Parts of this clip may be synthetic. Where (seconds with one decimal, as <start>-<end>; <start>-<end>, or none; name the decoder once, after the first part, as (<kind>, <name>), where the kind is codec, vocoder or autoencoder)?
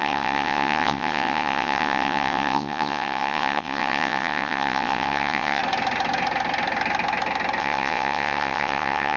0.0-5.6 (vocoder, WaveNeXt); 7.6-9.2